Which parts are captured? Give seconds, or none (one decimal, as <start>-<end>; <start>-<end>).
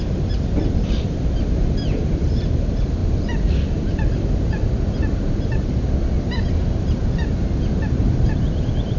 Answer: 3.0-7.7